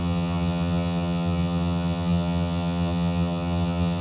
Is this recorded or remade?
remade